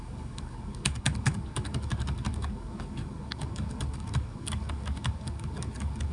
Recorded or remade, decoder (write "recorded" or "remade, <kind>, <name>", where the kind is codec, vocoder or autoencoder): remade, codec, DAC